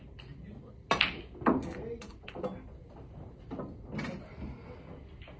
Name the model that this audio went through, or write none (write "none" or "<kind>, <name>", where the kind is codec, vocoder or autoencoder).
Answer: none